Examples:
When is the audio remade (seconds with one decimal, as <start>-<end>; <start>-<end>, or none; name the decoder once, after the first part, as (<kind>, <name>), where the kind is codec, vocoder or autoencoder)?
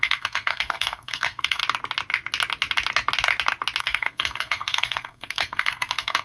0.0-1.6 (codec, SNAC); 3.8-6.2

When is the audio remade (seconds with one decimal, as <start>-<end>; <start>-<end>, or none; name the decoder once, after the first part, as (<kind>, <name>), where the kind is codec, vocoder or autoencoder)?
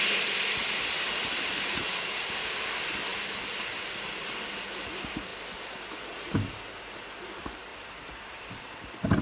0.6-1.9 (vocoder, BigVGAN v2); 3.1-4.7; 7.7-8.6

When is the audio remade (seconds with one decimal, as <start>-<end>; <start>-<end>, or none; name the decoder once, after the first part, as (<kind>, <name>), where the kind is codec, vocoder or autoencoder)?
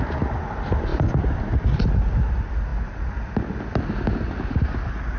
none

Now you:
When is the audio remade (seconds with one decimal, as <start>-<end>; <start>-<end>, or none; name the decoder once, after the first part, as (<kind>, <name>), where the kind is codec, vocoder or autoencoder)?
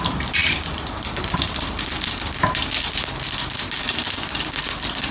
none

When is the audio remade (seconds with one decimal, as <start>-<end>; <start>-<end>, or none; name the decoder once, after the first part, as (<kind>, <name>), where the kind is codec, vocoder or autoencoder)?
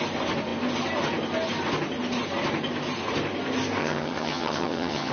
3.8-5.1 (vocoder, HiFi-GAN)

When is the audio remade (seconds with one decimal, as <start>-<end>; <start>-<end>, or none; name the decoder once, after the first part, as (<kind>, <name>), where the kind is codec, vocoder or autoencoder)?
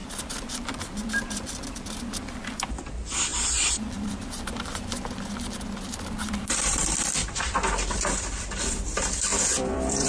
0.0-10.1 (vocoder, BigVGAN v2)